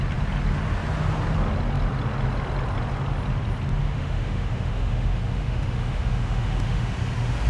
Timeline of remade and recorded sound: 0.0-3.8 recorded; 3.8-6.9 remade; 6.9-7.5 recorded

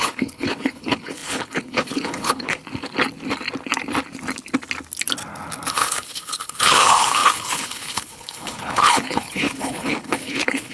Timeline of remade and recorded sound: 0.0-2.6 remade; 2.6-5.7 recorded; 5.7-10.7 remade